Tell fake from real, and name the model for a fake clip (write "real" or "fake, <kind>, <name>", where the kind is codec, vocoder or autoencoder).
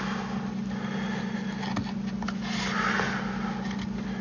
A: real